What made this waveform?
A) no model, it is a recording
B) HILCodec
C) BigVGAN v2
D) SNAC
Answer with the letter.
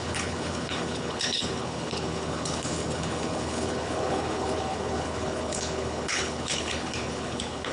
B